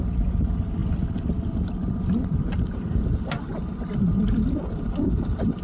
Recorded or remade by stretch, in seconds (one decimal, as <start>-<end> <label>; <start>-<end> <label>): 0.0-5.6 recorded